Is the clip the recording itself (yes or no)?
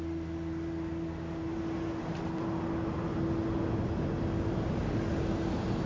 yes